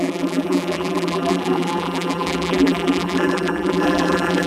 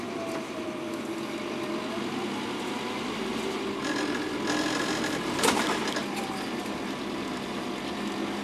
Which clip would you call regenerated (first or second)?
first